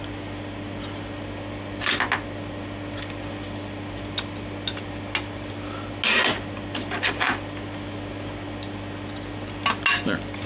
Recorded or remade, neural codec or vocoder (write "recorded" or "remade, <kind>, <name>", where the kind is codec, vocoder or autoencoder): recorded